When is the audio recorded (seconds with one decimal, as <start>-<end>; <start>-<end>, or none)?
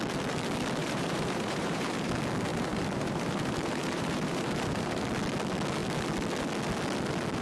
0.0-0.8; 2.1-2.5; 5.0-7.4